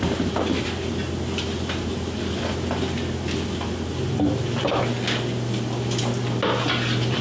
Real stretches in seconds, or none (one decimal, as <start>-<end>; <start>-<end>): 0.0-3.9; 4.8-7.2